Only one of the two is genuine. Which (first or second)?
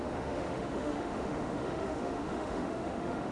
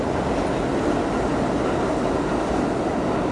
second